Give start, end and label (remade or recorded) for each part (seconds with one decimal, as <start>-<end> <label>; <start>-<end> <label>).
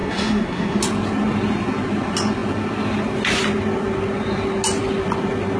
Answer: 0.0-0.8 remade; 0.8-5.6 recorded